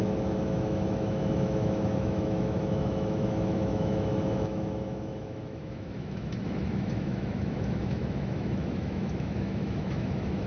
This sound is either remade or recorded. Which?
remade